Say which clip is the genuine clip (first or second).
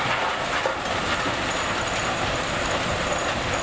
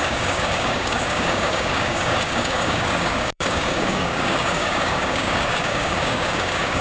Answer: first